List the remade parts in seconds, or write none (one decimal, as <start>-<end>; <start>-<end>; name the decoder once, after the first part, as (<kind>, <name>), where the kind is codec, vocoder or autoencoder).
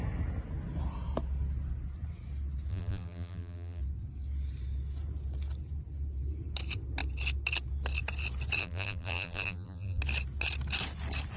2.7-3.8 (vocoder, BigVGAN v2); 8.6-10.0